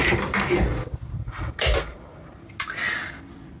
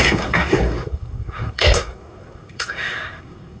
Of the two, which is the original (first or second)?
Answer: first